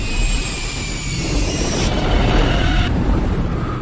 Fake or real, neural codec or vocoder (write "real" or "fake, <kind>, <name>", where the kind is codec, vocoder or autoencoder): fake, vocoder, BigVGAN v2